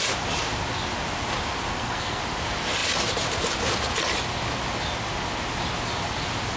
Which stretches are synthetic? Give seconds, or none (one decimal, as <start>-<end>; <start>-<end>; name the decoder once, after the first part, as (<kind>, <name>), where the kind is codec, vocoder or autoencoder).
1.7-2.2 (codec, SNAC)